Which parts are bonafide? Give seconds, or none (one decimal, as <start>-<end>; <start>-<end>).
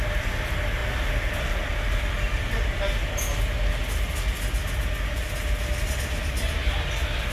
0.0-7.3